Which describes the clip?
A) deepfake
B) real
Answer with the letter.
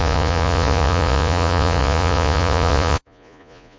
A